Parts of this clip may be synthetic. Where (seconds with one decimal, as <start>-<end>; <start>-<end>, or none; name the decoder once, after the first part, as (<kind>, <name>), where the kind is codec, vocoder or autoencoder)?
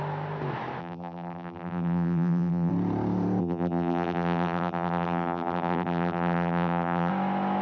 0.8-2.7 (vocoder, BigVGAN v2); 3.4-7.1